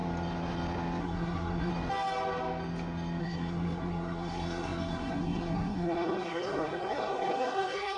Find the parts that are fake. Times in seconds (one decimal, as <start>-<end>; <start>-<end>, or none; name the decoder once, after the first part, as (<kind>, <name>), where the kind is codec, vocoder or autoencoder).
1.0-1.7 (codec, SNAC); 3.2-8.0